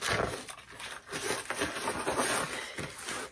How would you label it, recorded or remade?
recorded